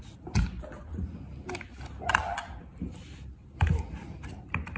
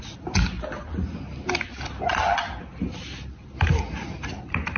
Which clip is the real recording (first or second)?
second